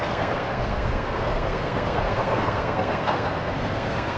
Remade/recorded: remade